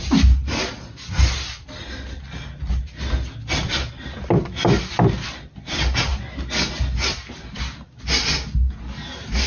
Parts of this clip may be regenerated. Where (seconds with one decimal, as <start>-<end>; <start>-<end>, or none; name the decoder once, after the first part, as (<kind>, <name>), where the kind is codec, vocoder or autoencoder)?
none